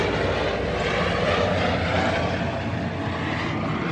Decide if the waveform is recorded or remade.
recorded